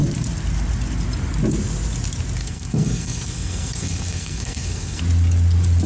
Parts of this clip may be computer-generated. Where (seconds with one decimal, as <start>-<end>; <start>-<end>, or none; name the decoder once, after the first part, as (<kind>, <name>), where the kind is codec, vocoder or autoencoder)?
2.4-5.0 (codec, SNAC)